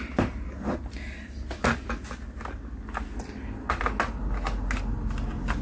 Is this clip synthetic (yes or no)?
no